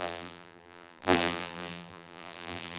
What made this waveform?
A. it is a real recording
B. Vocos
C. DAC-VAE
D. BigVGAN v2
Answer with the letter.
D